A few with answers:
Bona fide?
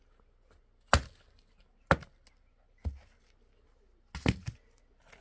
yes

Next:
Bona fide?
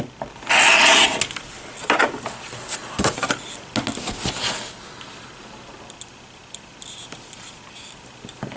yes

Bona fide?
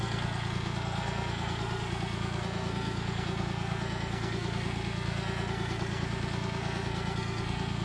no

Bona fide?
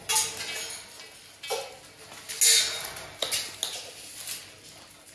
yes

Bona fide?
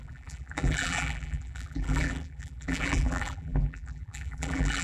no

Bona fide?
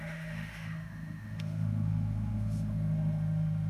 no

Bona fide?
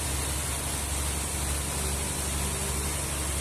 yes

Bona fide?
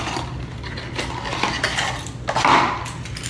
yes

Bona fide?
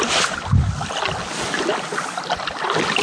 yes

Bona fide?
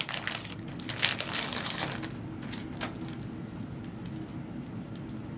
yes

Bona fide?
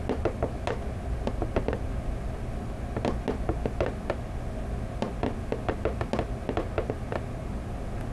yes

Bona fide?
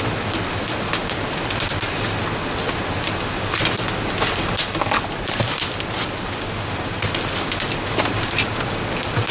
yes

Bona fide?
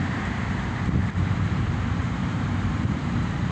no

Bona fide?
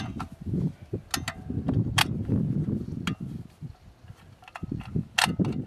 yes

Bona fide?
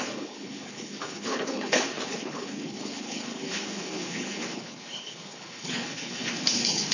no